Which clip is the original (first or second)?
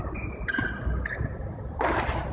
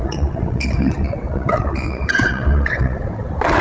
first